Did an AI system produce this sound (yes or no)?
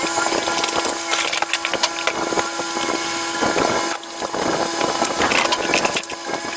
no